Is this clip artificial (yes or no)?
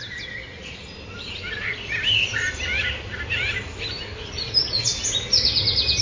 no